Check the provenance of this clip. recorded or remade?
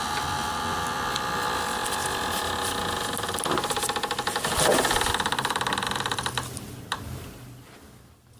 recorded